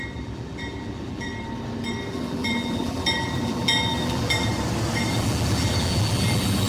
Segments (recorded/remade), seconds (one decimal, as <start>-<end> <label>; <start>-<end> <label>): 0.0-1.3 remade; 1.3-2.1 recorded; 2.1-4.5 remade; 4.5-5.1 recorded; 5.1-6.7 remade

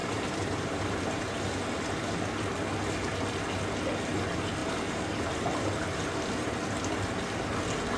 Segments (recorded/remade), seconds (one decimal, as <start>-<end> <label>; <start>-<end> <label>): 0.0-2.1 remade; 2.1-4.6 recorded; 4.6-6.5 remade; 6.5-8.0 recorded

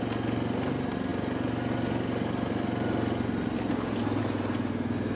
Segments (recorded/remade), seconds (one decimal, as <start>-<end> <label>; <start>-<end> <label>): 0.0-5.2 recorded